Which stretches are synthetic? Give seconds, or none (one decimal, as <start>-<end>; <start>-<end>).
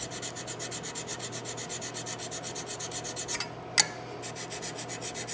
none